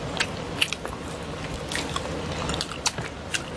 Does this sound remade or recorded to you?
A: recorded